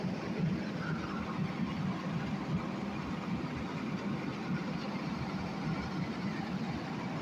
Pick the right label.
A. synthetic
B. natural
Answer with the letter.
B